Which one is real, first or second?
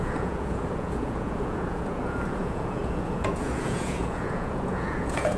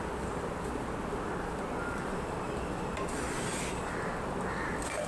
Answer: second